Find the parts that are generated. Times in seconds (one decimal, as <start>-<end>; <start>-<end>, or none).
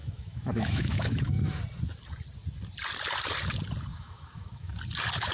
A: 0.0-1.6; 3.9-4.7